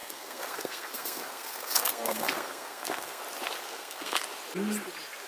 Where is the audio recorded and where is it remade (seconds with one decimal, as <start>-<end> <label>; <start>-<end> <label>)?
0.0-3.2 remade; 3.2-3.6 recorded; 3.6-4.2 remade; 4.2-5.3 recorded